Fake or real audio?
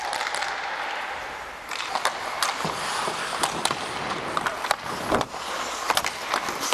fake